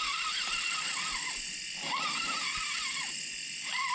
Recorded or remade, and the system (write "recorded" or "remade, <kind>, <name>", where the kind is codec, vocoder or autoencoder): recorded